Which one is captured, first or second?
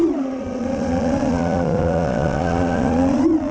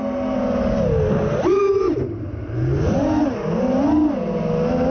second